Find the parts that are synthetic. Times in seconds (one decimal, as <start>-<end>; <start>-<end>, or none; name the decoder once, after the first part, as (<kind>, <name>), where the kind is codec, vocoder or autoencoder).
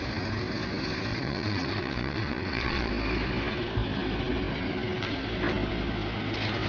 1.1-2.9 (vocoder, Vocos)